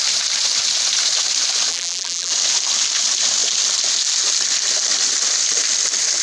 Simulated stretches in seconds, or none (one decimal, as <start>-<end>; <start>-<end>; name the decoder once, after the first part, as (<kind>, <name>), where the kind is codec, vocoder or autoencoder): 1.7-2.3 (vocoder, BigVGAN v2)